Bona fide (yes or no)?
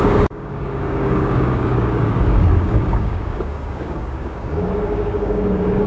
no